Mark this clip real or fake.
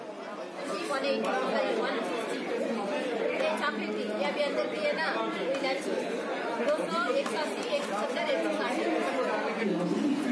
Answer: real